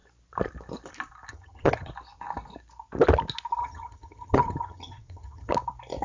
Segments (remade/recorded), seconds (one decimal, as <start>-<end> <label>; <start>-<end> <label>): 0.0-1.3 recorded; 1.3-1.9 remade; 1.9-3.6 recorded; 3.6-5.5 remade; 5.5-6.0 recorded